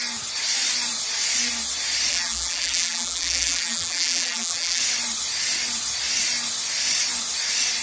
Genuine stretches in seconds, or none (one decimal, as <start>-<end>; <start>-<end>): 0.0-2.1; 4.8-7.8